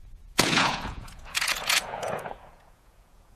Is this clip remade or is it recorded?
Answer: remade